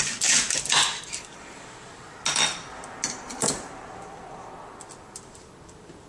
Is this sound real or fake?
real